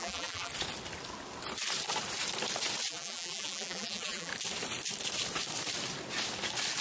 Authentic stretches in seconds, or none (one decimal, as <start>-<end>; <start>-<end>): 0.5-2.9; 4.3-6.8